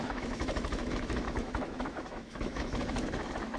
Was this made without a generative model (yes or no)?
no